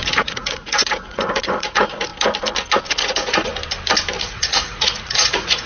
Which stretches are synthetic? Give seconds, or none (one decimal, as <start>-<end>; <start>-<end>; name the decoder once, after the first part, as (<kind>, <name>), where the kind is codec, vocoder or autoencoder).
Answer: 0.0-2.1 (vocoder, Vocos); 2.9-3.5; 4.2-5.7

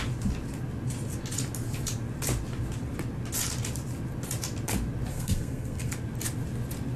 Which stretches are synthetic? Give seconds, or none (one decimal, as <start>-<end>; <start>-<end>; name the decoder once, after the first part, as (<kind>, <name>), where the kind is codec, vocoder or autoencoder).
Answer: 5.1-5.9 (codec, SNAC)

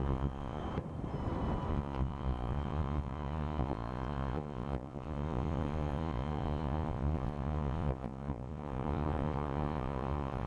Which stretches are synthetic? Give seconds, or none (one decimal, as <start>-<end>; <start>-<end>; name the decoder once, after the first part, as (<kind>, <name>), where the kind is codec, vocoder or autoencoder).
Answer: 0.0-0.6 (vocoder, Vocos); 1.7-10.5

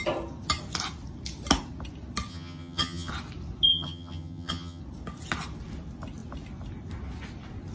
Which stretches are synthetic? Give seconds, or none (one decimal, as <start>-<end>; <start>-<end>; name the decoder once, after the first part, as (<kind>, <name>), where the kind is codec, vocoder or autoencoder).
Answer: 2.3-3.1 (vocoder, HiFi-GAN); 3.7-4.8

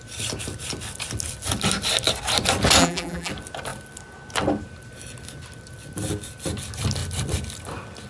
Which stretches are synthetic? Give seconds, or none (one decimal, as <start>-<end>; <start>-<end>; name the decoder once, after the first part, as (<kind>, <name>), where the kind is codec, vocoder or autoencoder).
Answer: 2.8-3.3 (vocoder, BigVGAN v2)